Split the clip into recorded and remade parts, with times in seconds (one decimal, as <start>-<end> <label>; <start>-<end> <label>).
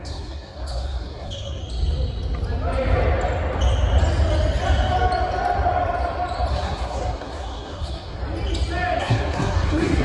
0.0-1.6 remade; 1.6-6.5 recorded; 6.5-8.2 remade; 8.2-9.0 recorded; 9.0-10.0 remade